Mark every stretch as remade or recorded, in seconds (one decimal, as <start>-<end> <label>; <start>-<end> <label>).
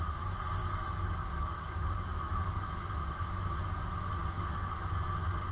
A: 0.0-0.6 recorded; 0.6-3.0 remade; 3.0-5.5 recorded